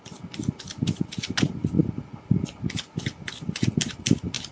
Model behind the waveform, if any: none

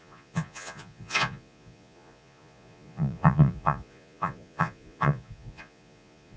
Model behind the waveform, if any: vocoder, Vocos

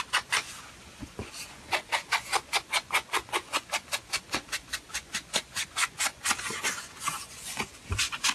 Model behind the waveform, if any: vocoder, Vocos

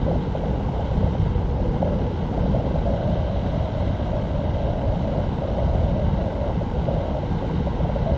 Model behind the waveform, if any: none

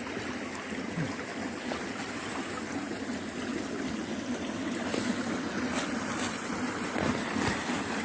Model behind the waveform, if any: none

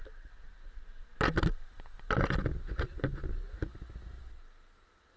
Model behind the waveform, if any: none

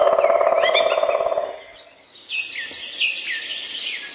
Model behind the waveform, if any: none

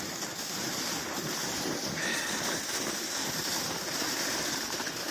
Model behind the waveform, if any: none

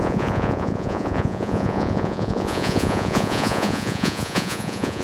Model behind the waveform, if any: vocoder, Vocos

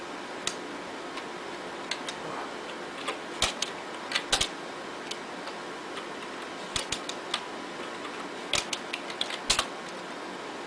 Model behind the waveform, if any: none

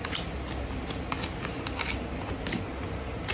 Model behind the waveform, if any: none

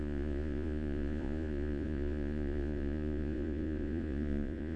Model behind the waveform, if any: vocoder, Vocos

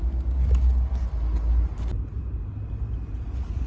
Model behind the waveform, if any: none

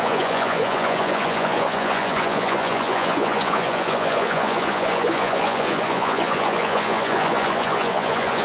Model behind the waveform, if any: vocoder, Vocos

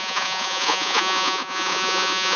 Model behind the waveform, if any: vocoder, Vocos